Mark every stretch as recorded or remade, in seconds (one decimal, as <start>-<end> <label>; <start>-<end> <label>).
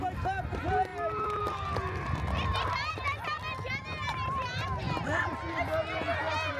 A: 0.0-6.6 recorded